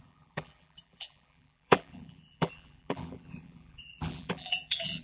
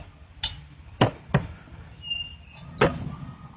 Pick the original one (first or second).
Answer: second